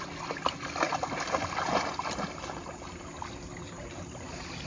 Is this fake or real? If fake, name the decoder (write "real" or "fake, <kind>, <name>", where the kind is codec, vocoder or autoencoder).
real